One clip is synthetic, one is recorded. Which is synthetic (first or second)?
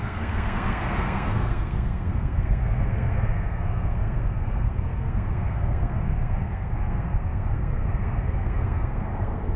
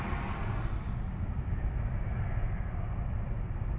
first